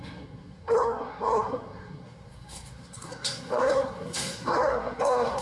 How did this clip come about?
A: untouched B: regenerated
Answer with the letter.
B